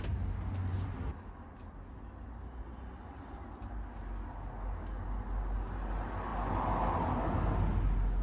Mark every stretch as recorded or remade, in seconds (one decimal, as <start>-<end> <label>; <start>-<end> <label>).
0.0-8.2 recorded